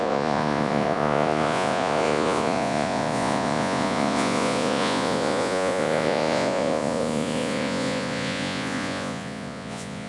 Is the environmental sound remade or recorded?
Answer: remade